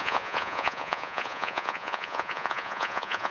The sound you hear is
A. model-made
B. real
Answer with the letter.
A